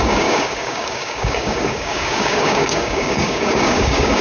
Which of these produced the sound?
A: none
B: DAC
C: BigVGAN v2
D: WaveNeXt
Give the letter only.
B